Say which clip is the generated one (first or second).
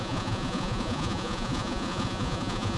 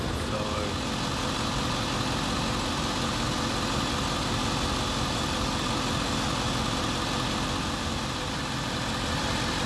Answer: first